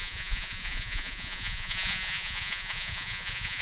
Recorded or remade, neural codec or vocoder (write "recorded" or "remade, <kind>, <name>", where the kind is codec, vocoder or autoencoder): remade, vocoder, Vocos